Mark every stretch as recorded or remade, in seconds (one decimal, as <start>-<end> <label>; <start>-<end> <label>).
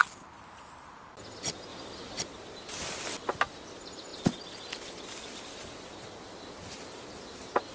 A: 0.0-7.7 recorded